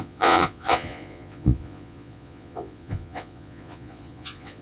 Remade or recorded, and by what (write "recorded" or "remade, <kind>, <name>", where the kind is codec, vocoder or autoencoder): remade, vocoder, Vocos